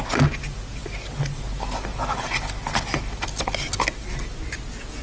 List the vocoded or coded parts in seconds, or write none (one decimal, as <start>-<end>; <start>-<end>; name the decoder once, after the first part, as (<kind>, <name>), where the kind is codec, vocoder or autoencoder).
none